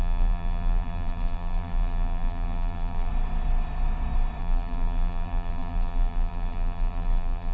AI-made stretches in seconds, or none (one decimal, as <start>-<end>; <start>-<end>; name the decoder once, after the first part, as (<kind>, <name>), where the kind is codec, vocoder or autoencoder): 0.0-3.1 (vocoder, BigVGAN v2); 4.4-7.5